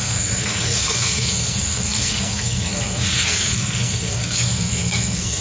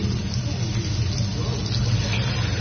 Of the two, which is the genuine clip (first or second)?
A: second